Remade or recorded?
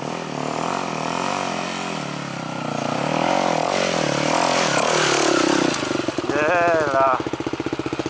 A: recorded